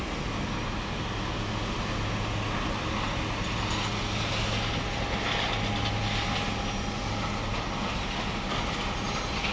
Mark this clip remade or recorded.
recorded